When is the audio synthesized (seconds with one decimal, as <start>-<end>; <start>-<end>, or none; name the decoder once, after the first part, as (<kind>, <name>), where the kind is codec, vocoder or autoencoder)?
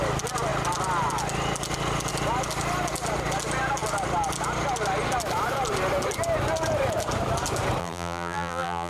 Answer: 7.8-8.9 (vocoder, BigVGAN v2)